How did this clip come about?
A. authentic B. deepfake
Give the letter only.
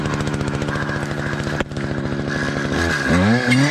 A